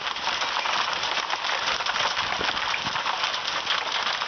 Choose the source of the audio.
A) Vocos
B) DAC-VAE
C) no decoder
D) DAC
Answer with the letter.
C